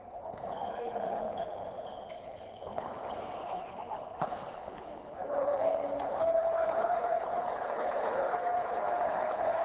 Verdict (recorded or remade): remade